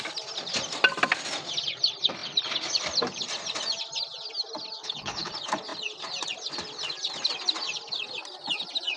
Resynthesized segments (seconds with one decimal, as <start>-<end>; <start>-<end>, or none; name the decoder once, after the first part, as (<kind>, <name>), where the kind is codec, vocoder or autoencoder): 4.8-5.3 (codec, HILCodec)